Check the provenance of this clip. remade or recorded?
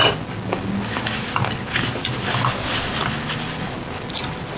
recorded